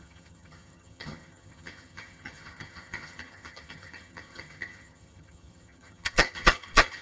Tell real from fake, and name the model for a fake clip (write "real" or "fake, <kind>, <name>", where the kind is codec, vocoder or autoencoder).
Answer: fake, vocoder, HiFi-GAN